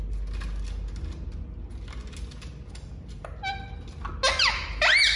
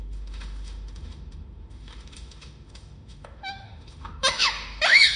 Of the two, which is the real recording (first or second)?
first